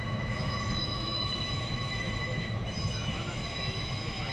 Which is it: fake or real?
fake